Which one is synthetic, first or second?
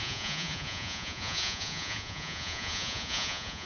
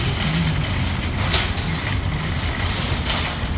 first